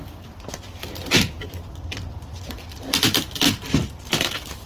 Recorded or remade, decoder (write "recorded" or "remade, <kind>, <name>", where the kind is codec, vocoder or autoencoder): recorded